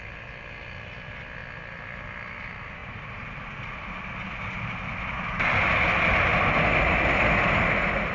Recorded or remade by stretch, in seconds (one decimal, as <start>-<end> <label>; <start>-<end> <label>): 0.0-8.1 recorded